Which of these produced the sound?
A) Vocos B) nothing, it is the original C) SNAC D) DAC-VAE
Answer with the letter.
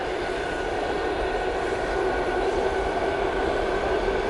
B